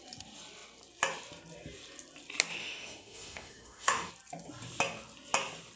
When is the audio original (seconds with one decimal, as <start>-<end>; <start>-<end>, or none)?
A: 0.0-2.6; 4.1-5.8

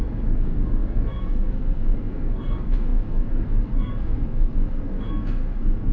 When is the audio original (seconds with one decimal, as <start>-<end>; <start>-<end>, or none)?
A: none

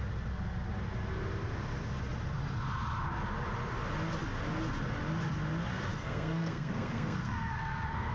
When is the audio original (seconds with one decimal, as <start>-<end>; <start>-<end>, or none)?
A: 0.0-5.9

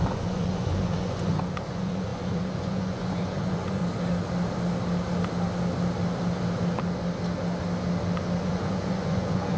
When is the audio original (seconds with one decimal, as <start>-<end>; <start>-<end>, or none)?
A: 3.8-8.4

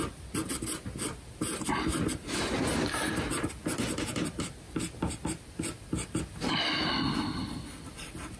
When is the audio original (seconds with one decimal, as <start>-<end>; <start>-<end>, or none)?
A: 3.6-4.3